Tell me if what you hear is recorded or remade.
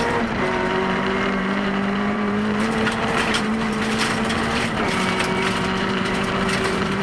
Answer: remade